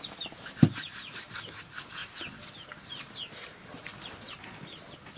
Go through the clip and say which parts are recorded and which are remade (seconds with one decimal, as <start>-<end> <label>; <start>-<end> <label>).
0.0-2.0 recorded; 2.0-4.3 remade; 4.3-5.2 recorded